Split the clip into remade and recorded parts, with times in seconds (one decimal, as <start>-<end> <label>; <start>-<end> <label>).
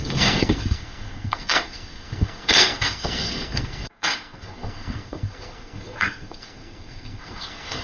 0.0-7.8 remade